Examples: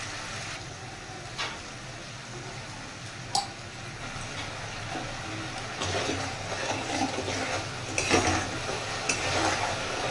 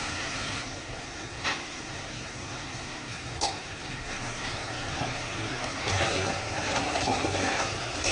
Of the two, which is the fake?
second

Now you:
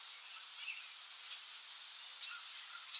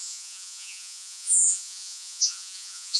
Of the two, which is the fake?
second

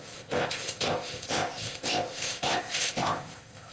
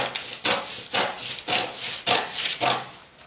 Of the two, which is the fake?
first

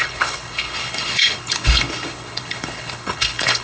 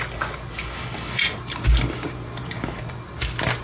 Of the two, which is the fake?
first